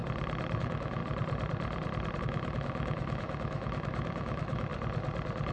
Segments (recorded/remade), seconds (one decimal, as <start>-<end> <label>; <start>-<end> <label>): 0.0-0.6 recorded; 0.6-1.0 remade; 1.0-2.2 recorded; 2.2-4.7 remade; 4.7-5.5 recorded